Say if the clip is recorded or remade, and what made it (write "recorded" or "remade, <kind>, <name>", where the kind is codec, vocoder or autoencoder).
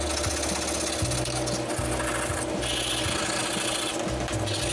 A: recorded